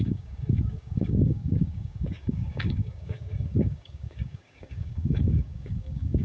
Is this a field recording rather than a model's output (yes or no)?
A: no